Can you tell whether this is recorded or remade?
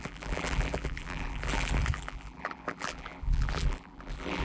remade